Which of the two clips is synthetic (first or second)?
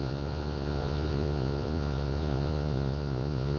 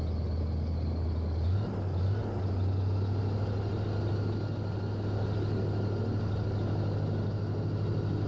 first